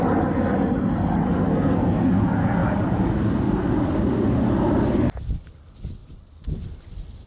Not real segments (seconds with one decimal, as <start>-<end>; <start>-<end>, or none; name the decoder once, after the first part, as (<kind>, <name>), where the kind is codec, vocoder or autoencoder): 1.5-2.1 (codec, SNAC)